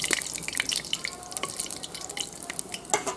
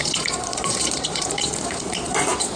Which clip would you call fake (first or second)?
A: second